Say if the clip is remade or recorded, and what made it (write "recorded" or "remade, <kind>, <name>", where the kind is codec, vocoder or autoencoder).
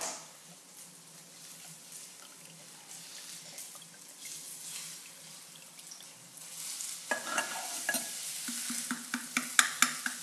recorded